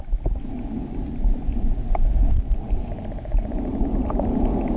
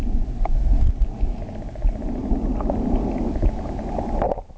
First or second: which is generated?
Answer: first